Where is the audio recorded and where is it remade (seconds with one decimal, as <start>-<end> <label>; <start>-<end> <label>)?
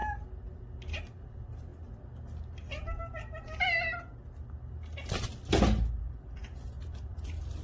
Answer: 0.0-1.0 recorded; 1.0-1.7 remade; 1.7-6.0 recorded; 6.0-6.4 remade; 6.4-7.0 recorded; 7.0-7.6 remade